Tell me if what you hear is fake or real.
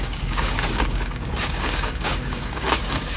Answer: fake